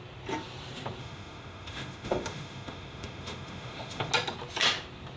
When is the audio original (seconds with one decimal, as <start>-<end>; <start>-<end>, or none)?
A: 0.0-1.0; 4.1-5.2